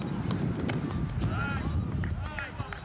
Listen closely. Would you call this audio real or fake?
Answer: real